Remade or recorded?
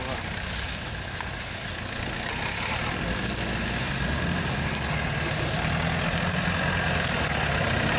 recorded